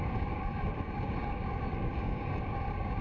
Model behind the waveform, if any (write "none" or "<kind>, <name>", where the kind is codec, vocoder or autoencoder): codec, DAC